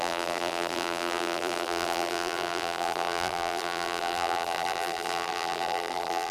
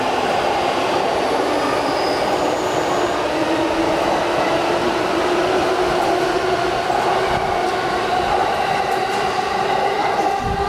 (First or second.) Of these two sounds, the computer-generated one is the first